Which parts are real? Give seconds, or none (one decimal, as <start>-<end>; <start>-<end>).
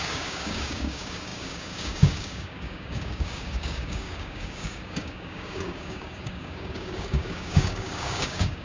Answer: none